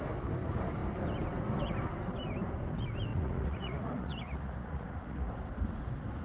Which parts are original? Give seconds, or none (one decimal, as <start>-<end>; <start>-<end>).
0.0-3.1; 5.3-6.2